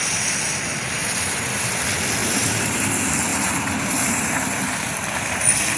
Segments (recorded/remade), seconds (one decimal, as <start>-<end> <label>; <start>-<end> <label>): 0.0-1.0 recorded; 1.0-1.7 remade; 1.7-2.2 recorded; 2.2-2.9 remade; 2.9-3.3 recorded; 3.3-5.8 remade